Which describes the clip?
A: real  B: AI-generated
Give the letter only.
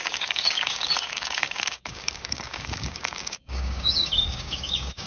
B